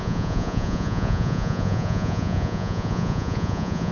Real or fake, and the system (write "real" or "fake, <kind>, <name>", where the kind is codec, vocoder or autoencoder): fake, vocoder, Vocos